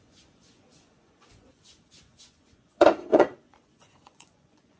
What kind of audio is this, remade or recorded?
remade